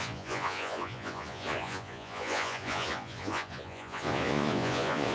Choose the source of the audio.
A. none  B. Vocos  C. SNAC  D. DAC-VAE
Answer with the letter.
B